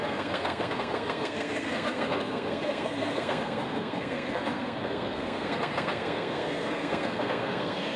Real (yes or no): no